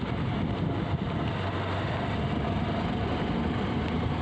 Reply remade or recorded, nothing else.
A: recorded